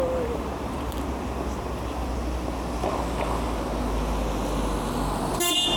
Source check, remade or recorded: recorded